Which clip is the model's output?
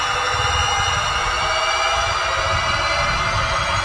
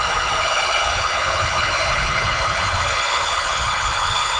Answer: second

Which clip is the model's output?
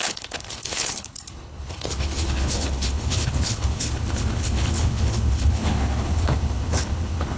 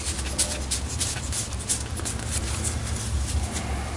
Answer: first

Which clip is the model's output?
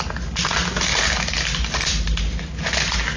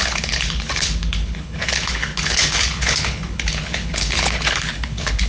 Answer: second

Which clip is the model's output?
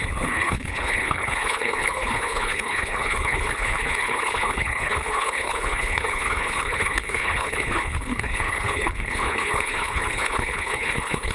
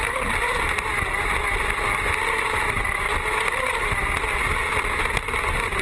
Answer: first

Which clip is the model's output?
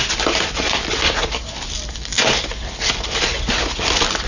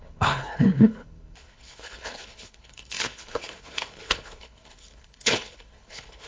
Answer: second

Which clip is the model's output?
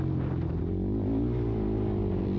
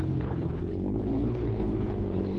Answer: second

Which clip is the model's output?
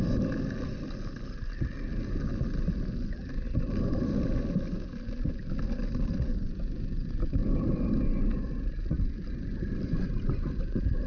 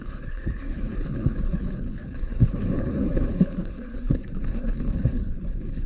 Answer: second